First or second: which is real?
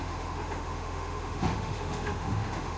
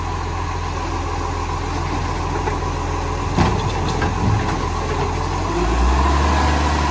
second